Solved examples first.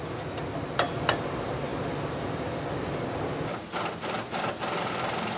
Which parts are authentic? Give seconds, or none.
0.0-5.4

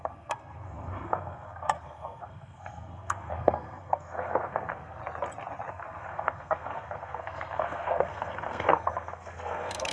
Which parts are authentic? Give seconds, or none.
5.0-5.7

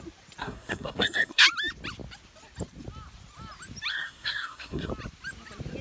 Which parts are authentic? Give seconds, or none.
0.0-0.4; 1.4-3.9; 4.9-5.8